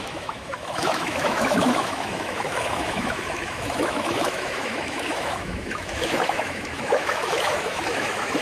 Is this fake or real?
fake